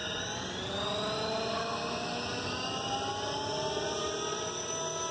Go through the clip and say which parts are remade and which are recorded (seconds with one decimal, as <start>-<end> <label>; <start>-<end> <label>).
0.0-5.1 recorded